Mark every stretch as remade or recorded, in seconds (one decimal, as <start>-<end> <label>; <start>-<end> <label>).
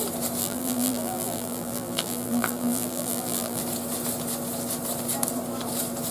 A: 0.0-0.4 recorded; 0.4-3.6 remade; 3.6-6.1 recorded